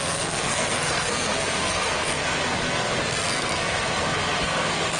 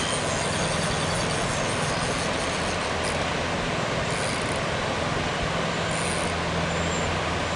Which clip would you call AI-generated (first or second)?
first